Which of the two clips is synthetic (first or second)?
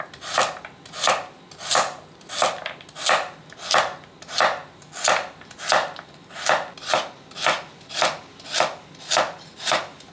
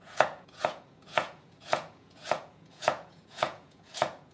second